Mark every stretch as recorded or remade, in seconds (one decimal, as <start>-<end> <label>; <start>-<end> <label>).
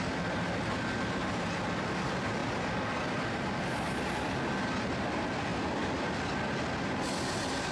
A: 0.0-7.7 recorded